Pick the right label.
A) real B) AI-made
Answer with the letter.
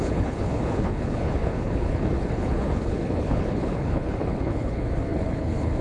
B